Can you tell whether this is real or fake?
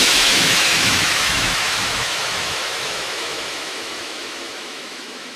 fake